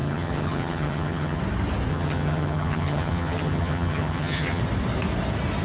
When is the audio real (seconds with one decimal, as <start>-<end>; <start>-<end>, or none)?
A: 1.4-1.9; 4.6-5.6